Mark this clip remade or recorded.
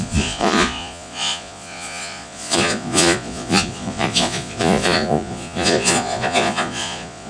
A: remade